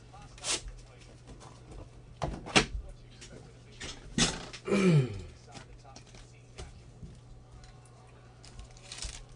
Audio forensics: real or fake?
real